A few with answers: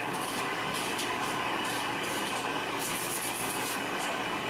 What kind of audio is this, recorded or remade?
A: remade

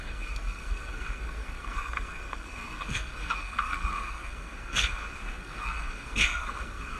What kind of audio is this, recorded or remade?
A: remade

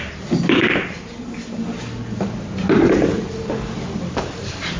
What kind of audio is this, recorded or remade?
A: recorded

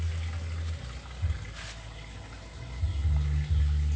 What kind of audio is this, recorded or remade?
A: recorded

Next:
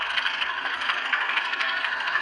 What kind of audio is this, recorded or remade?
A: remade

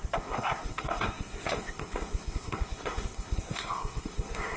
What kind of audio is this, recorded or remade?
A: remade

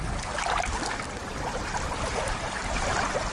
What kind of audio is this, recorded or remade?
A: recorded